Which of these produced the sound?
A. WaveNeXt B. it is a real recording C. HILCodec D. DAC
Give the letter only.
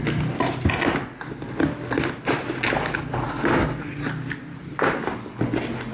B